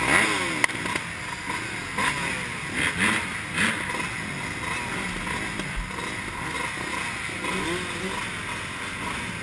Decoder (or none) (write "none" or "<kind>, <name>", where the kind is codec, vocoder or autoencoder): none